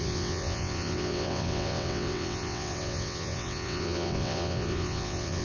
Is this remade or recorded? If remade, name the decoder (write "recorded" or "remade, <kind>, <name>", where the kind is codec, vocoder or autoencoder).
remade, vocoder, WaveNeXt